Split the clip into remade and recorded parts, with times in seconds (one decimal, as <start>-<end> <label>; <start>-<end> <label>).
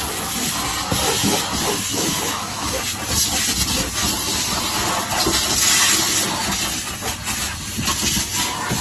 0.0-1.9 recorded; 1.9-2.8 remade; 2.8-8.8 recorded